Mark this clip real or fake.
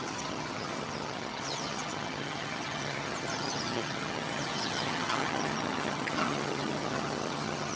fake